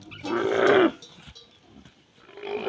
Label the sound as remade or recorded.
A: recorded